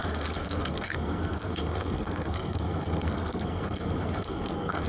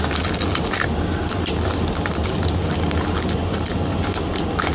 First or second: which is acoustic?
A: second